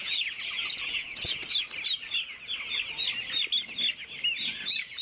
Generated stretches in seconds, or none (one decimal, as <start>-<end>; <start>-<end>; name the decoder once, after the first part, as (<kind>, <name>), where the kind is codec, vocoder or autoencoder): 0.0-1.4 (vocoder, Vocos); 4.4-5.0